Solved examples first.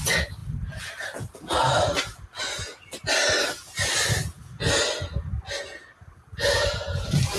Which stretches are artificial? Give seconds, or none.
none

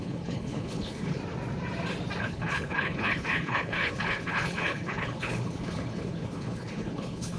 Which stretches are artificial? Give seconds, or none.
0.0-1.2 (codec, HILCodec); 2.2-7.4

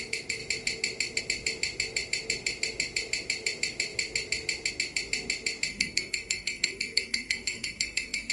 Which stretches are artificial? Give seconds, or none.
5.7-8.3 (codec, SNAC)

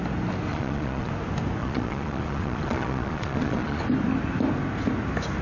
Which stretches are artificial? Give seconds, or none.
0.5-1.1 (vocoder, Vocos); 1.6-3.8

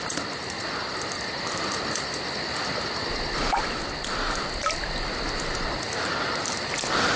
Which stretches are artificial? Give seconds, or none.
none

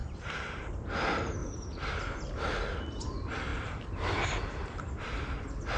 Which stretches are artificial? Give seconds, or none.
0.0-0.6 (vocoder, BigVGAN v2); 1.4-2.0

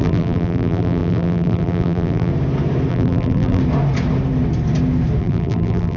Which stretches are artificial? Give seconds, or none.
0.0-2.3 (vocoder, BigVGAN v2); 2.9-3.6; 5.2-6.0